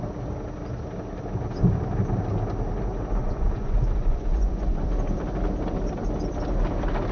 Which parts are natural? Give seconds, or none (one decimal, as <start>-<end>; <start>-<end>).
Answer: 0.0-3.2; 4.9-7.1